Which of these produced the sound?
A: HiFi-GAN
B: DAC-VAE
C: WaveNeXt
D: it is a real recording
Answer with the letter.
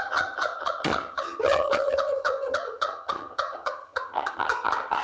A